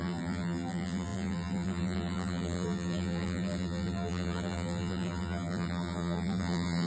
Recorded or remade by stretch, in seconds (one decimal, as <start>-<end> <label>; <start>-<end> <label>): 0.0-6.9 remade